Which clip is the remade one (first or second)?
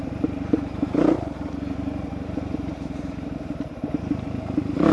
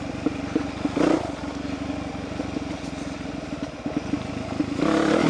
first